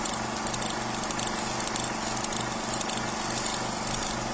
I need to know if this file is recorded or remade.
recorded